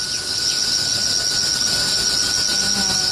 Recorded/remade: recorded